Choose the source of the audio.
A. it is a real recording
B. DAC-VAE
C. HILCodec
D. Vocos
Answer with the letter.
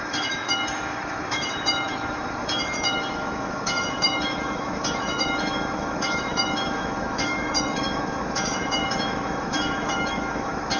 B